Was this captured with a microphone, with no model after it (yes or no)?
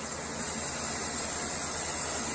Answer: yes